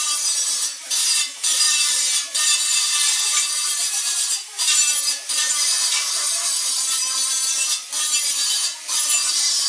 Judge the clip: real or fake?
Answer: fake